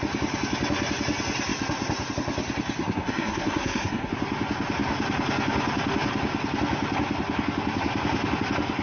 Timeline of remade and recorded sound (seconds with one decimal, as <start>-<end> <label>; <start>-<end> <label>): 0.0-2.8 recorded; 2.8-4.1 remade; 4.1-8.8 recorded